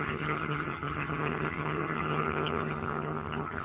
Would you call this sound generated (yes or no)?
yes